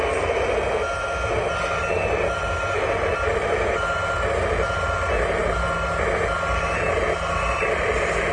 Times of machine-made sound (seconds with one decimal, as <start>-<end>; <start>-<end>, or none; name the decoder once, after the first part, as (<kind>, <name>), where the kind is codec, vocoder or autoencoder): none